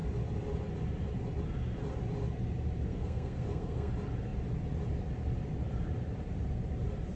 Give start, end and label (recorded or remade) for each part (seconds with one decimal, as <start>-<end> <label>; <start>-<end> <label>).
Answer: 0.0-2.9 recorded; 2.9-3.9 remade; 3.9-7.2 recorded